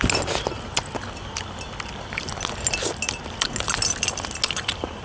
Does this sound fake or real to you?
real